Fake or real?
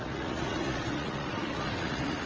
fake